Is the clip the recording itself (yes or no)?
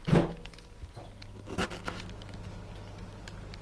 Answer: yes